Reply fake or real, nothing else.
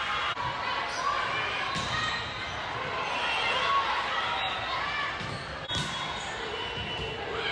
real